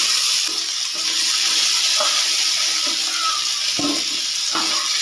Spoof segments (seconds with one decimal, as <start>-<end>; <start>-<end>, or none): none